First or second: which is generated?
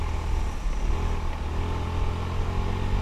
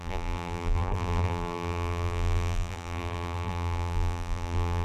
second